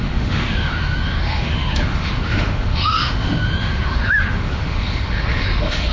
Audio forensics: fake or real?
fake